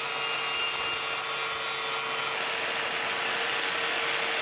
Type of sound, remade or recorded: recorded